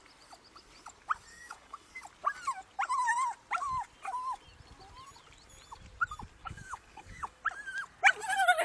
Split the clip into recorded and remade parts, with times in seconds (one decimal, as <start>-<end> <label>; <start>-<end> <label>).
0.0-1.3 recorded; 1.3-1.9 remade; 1.9-6.4 recorded; 6.4-7.4 remade; 7.4-8.6 recorded